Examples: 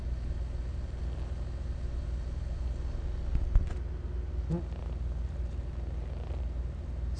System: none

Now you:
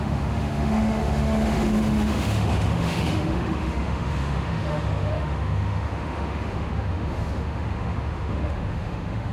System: autoencoder, DAC-VAE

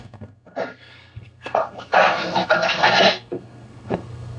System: codec, SNAC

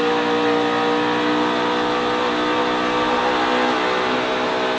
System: none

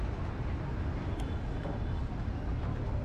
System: none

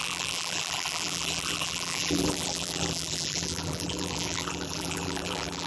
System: vocoder, BigVGAN v2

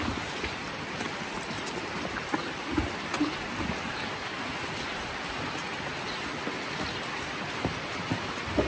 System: none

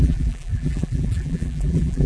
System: vocoder, BigVGAN v2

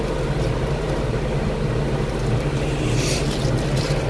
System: none